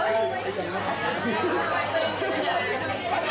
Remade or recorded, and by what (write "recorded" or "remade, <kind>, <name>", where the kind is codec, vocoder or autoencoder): recorded